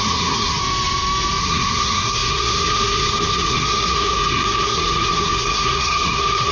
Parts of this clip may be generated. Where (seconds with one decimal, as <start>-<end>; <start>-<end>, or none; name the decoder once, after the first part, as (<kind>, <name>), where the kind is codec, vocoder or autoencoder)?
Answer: 0.0-0.6 (codec, SNAC); 1.4-6.5